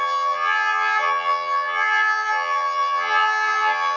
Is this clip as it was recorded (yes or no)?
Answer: no